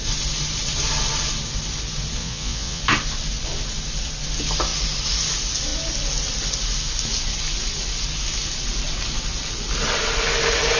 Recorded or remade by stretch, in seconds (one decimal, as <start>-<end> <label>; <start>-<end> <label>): 0.0-2.2 recorded; 2.2-2.8 remade; 2.8-10.8 recorded